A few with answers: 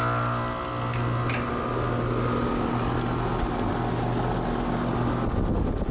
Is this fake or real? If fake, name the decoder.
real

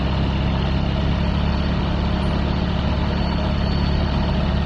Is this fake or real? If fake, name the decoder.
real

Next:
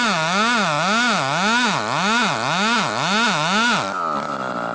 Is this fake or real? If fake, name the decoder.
real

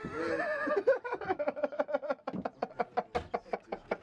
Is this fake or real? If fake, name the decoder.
real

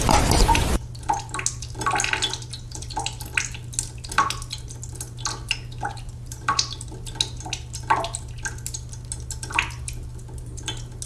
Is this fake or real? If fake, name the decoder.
real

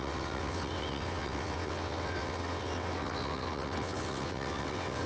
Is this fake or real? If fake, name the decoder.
fake, vocoder, WaveNeXt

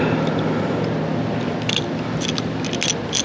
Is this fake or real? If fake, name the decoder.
real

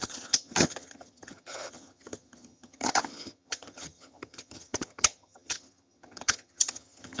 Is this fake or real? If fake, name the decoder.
fake, vocoder, HiFi-GAN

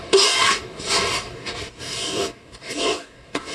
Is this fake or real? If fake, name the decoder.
fake, codec, DAC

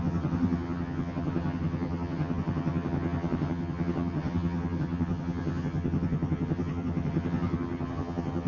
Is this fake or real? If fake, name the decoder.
fake, vocoder, HiFi-GAN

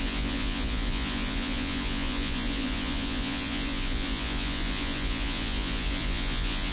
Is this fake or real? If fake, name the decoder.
fake, vocoder, Vocos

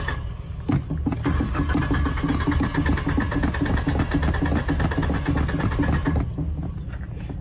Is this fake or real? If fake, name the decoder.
real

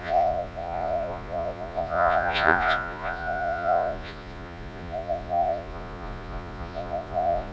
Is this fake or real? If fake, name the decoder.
fake, vocoder, Vocos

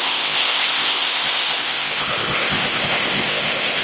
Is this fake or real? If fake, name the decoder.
fake, codec, ZipCodec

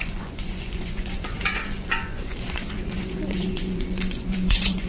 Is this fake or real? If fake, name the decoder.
fake, vocoder, Vocos